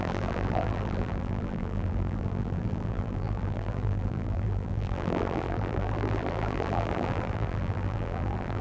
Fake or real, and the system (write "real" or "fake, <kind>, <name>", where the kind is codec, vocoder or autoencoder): fake, vocoder, BigVGAN v2